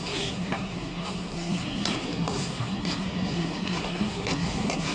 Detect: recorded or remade remade